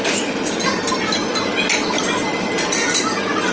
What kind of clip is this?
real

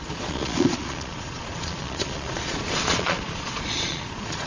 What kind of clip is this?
fake